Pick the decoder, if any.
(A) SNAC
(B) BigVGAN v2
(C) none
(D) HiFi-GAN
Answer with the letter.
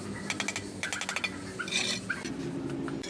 C